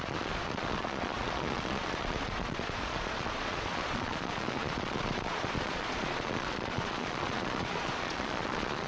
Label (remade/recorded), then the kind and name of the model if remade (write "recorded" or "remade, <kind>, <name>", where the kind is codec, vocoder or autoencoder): remade, vocoder, Vocos